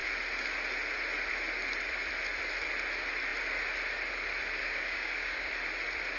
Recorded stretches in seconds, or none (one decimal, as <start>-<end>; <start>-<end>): 0.0-4.6; 5.5-6.2